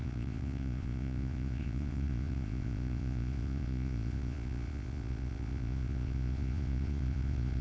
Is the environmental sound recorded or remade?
remade